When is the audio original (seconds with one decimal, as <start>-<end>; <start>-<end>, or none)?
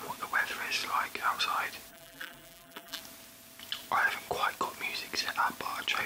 0.0-1.9; 3.0-6.1